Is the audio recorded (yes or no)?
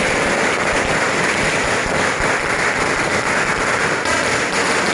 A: yes